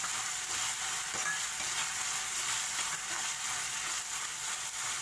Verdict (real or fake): real